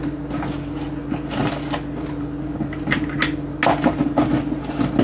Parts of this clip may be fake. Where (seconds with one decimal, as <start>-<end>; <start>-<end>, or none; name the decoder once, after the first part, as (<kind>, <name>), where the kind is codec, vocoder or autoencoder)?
none